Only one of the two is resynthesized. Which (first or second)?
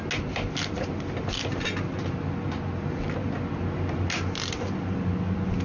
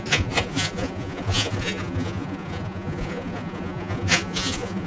second